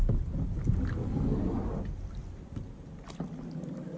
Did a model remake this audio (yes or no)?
no